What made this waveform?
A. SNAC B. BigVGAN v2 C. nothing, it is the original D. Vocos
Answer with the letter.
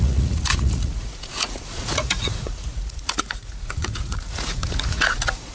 D